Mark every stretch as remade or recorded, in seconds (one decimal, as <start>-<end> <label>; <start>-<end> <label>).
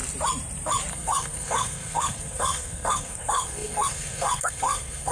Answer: 0.0-0.9 recorded; 0.9-5.1 remade